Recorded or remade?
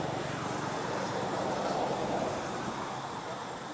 remade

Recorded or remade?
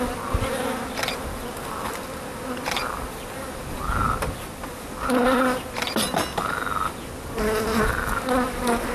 recorded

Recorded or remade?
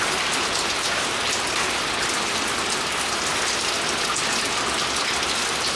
recorded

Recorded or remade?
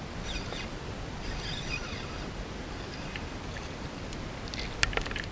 recorded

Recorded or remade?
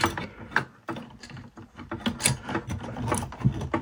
recorded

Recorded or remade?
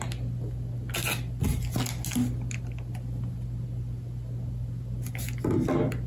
recorded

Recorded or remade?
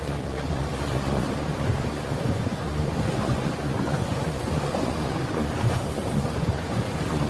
remade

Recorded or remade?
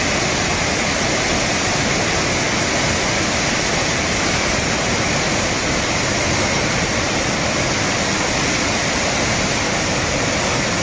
recorded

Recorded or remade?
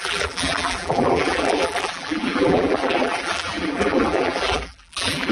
remade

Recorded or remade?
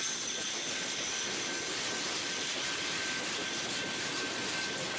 recorded